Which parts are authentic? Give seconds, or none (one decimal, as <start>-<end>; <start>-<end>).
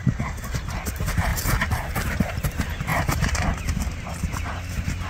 1.3-2.2